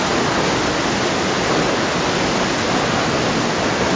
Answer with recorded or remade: recorded